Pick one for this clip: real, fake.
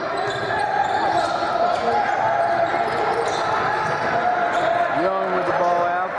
real